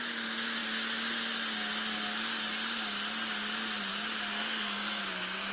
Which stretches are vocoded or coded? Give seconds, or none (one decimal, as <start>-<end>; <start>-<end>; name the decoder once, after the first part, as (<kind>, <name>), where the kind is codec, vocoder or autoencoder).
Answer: 4.3-5.0 (codec, SNAC)